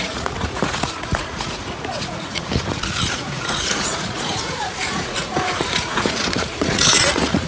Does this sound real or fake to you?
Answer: fake